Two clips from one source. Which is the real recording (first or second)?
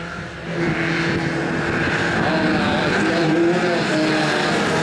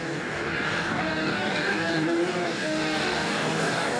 first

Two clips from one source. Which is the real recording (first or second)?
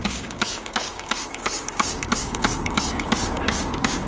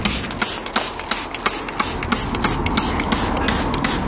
second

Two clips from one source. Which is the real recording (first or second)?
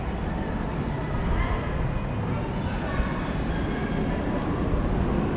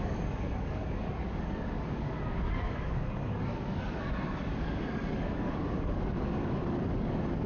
first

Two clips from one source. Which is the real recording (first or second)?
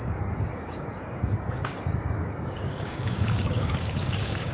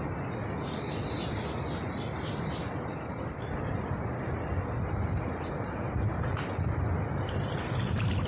second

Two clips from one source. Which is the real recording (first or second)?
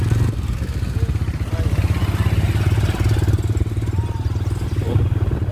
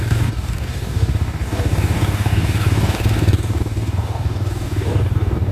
first